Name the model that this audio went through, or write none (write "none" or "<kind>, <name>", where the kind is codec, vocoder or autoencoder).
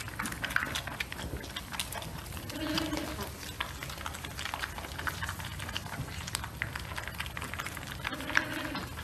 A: none